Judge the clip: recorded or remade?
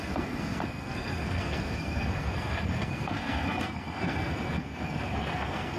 remade